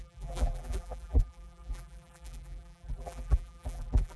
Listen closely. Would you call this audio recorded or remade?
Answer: remade